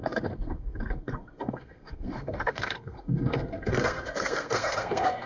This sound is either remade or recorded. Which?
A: remade